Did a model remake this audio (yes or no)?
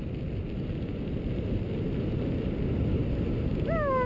no